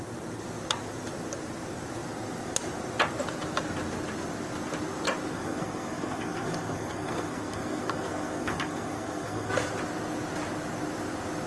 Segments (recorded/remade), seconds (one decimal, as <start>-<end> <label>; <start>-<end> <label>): 0.0-5.3 recorded; 5.3-9.5 remade; 9.5-11.5 recorded

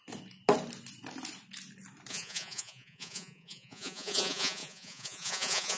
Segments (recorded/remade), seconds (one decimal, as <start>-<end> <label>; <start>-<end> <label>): 0.0-2.1 recorded; 2.1-5.8 remade

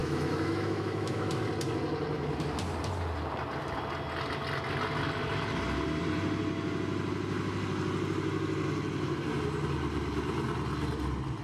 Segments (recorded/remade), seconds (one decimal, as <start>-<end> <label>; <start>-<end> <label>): 0.0-1.3 remade; 1.3-11.4 recorded